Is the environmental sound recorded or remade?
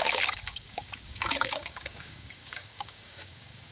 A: remade